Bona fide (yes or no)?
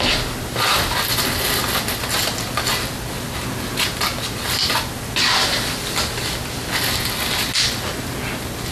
yes